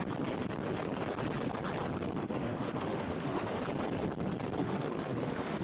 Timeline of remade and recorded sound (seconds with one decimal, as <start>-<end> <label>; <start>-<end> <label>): 0.0-2.2 recorded; 2.2-3.6 remade; 3.6-4.6 recorded; 4.6-5.6 remade